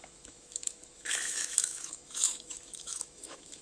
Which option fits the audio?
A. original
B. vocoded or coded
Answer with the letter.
B